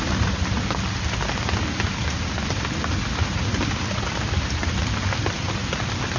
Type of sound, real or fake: real